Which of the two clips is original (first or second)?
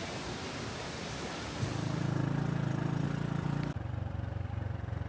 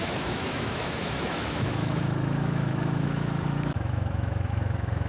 first